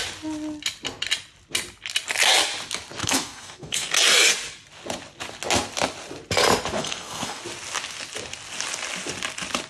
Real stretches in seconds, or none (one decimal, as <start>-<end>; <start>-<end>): 0.0-3.0; 3.9-6.8; 7.4-9.7